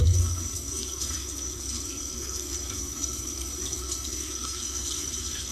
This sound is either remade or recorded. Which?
remade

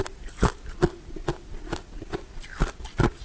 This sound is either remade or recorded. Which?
recorded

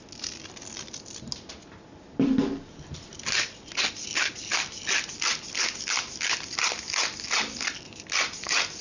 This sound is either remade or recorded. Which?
recorded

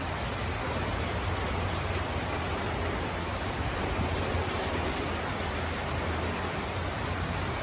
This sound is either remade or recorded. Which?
recorded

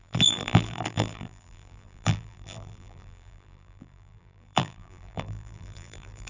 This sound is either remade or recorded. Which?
remade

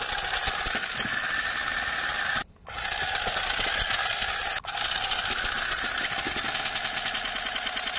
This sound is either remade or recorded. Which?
recorded